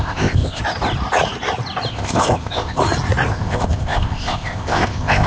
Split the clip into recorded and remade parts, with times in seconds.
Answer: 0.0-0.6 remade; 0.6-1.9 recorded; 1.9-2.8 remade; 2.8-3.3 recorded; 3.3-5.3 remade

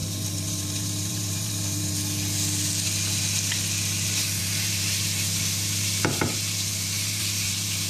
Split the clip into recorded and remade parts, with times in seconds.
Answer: 0.0-1.9 remade; 1.9-4.4 recorded; 4.4-7.9 remade

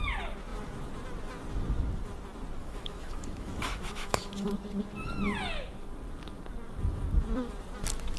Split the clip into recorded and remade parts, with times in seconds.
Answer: 0.0-2.6 recorded; 2.6-4.5 remade; 4.5-8.2 recorded

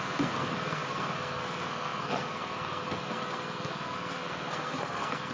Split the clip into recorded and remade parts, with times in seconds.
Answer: 0.0-5.3 remade